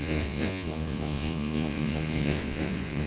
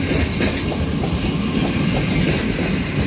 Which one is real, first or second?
second